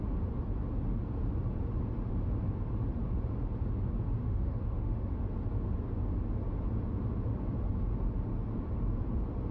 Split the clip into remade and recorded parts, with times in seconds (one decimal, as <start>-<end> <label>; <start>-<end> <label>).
0.0-4.2 recorded; 4.2-5.1 remade; 5.1-9.5 recorded

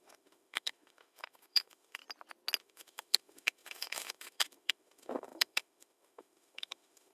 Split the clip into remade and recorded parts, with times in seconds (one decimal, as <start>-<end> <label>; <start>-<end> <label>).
0.0-2.0 remade; 2.0-2.6 recorded; 2.6-7.1 remade

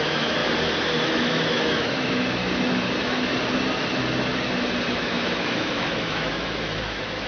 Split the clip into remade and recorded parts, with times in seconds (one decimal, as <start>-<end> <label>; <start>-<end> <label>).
0.0-0.4 remade; 0.4-1.0 recorded; 1.0-2.4 remade; 2.4-4.9 recorded; 4.9-7.3 remade

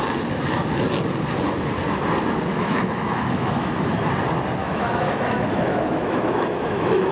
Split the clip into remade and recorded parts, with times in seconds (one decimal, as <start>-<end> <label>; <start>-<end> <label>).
0.0-2.5 recorded; 2.5-3.9 remade; 3.9-4.6 recorded; 4.6-7.1 remade